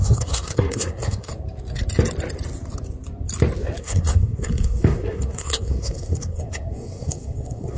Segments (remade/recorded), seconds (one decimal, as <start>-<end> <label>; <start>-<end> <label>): 0.0-1.3 remade; 1.3-3.8 recorded; 3.8-7.8 remade